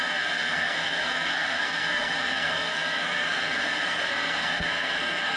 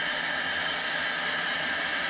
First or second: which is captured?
second